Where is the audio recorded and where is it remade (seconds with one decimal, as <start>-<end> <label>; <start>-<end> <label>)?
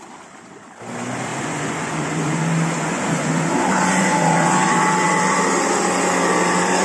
0.0-1.3 recorded; 1.3-5.4 remade; 5.4-6.8 recorded